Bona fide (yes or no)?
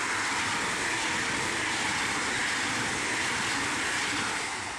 yes